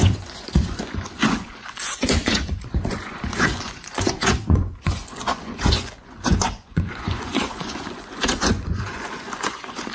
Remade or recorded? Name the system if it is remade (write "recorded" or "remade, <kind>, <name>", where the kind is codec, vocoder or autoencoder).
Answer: remade, vocoder, Vocos